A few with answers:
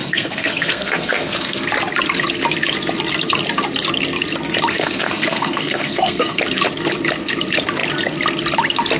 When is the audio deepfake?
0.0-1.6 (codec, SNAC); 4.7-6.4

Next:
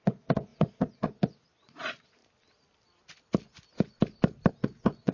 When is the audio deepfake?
0.0-2.2 (vocoder, Vocos); 4.5-5.1

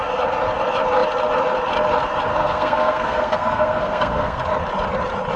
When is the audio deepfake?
2.3-4.4 (codec, SNAC)